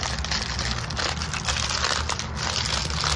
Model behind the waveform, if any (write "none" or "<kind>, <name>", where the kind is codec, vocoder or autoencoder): none